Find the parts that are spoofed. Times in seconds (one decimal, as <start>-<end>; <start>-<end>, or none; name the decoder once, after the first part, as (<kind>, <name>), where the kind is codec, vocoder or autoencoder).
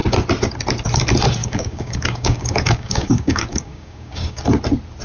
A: 1.4-4.4 (codec, DAC)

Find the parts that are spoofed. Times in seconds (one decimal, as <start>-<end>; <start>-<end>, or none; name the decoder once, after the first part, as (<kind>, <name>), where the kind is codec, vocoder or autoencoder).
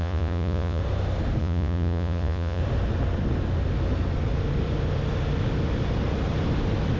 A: 0.0-0.8 (vocoder, Vocos); 1.4-2.6